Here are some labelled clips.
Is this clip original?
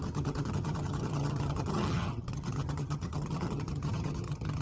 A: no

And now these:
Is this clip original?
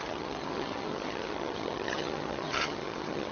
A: no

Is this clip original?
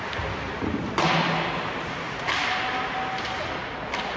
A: yes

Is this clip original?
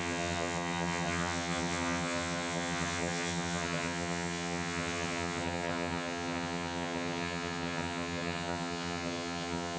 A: no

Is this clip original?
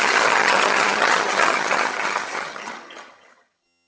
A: no